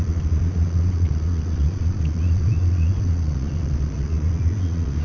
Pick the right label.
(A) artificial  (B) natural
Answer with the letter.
A